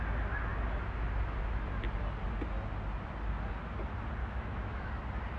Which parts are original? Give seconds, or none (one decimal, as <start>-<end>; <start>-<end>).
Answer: 0.0-4.2; 4.9-5.4